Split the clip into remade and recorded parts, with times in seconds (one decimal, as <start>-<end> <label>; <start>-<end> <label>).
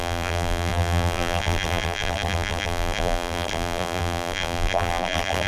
0.0-5.5 remade